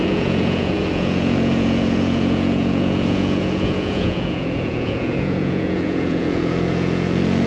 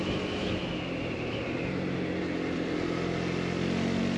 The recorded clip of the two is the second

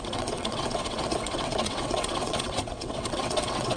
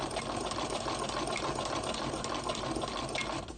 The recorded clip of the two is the second